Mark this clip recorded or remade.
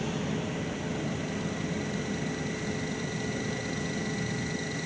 recorded